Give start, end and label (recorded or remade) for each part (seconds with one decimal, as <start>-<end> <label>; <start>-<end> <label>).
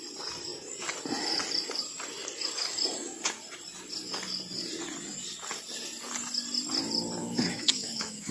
0.0-7.2 recorded; 7.2-8.3 remade